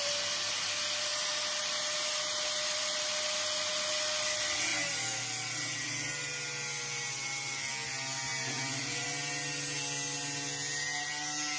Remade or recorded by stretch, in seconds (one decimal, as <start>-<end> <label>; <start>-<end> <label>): 0.0-11.6 recorded